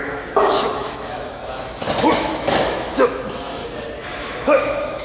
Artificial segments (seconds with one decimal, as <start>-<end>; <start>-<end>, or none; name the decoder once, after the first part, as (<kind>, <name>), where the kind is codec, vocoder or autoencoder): 0.0-1.4 (autoencoder, DAC-VAE); 2.1-3.6; 4.2-5.0

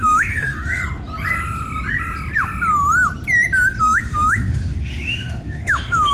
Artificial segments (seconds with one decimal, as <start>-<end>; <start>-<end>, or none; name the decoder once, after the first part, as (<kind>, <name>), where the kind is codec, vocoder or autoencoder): 0.0-0.8 (autoencoder, DAC-VAE); 3.8-6.1